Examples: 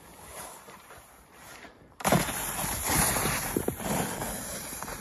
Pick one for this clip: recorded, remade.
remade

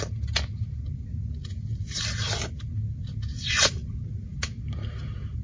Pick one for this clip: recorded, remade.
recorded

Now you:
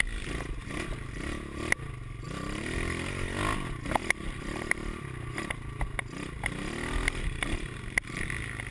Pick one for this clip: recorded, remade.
recorded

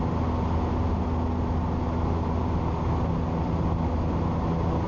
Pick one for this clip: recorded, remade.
recorded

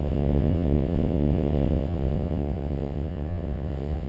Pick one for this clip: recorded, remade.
remade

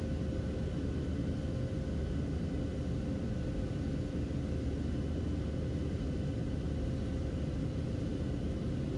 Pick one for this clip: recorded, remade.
recorded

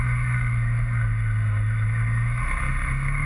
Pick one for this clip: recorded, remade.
remade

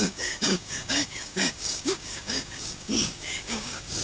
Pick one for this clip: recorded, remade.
remade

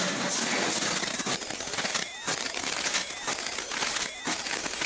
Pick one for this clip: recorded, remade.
recorded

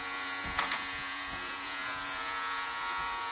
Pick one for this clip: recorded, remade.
remade